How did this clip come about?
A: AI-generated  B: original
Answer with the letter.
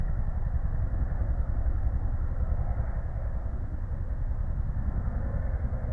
A